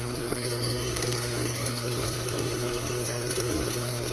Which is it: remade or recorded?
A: remade